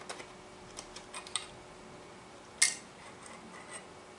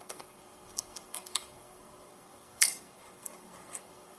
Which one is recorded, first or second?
first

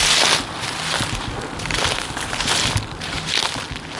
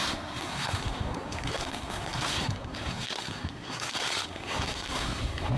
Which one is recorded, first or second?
first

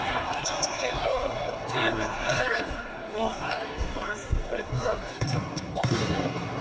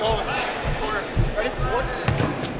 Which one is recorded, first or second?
second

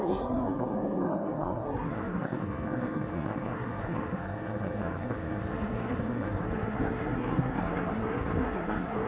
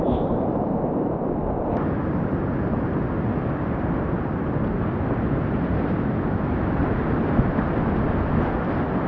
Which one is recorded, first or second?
second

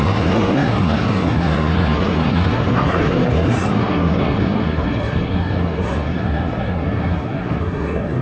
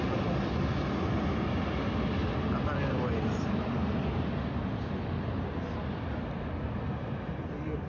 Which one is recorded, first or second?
second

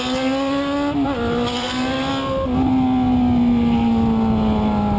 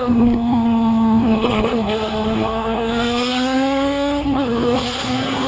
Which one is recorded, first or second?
first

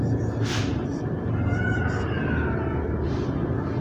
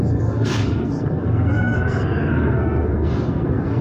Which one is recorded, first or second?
first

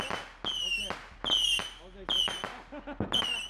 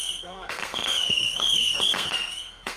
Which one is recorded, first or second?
first